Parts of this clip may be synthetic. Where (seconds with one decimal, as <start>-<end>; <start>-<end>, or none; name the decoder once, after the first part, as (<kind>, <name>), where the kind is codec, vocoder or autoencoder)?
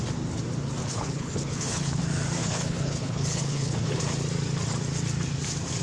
0.8-2.0 (codec, HILCodec); 2.4-4.0